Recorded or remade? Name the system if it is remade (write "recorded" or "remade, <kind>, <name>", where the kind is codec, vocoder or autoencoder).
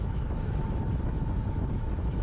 remade, autoencoder, DAC-VAE